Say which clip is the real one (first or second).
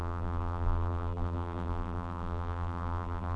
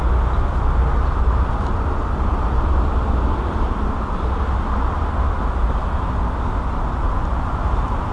second